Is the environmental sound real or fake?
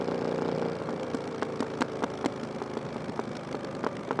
real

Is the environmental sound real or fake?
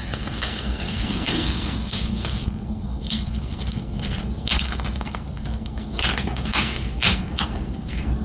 fake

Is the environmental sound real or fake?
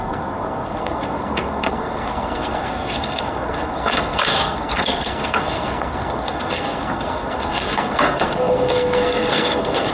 fake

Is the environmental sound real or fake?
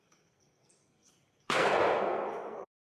fake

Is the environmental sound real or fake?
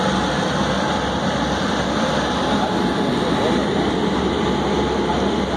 real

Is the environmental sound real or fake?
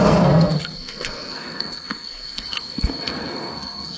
fake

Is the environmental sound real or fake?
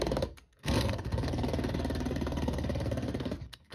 fake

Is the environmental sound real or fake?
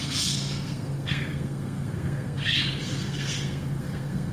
fake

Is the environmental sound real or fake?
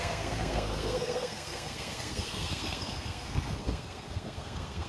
fake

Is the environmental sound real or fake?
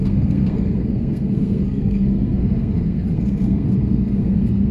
fake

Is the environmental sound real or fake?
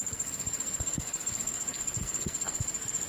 fake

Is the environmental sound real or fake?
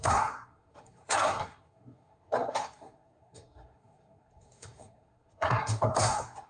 fake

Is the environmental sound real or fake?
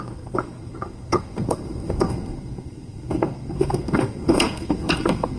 fake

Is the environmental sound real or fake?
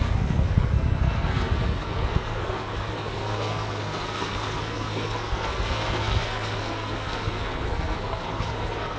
fake